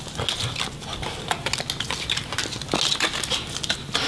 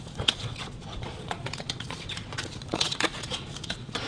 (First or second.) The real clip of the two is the first